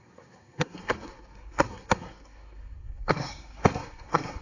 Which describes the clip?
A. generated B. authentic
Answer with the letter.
A